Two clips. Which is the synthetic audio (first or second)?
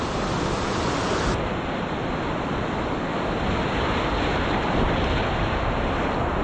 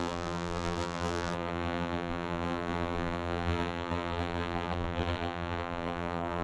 second